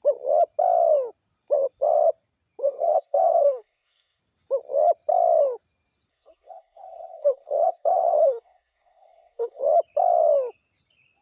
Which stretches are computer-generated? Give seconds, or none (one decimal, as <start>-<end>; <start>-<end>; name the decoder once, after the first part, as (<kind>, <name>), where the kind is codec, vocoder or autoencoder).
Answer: 2.6-4.2 (codec, SNAC); 6.1-9.6